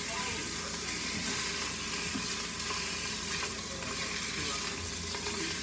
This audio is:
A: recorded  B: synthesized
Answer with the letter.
A